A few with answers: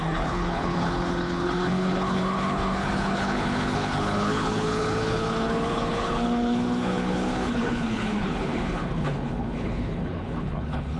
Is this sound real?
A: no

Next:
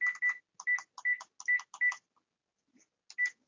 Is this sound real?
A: yes